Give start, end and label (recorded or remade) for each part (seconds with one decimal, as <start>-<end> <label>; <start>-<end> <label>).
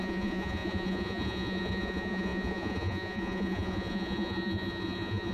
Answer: 0.0-5.3 remade